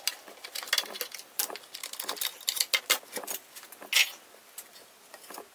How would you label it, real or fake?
real